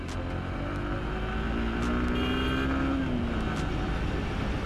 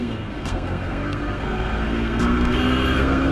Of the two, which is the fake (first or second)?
second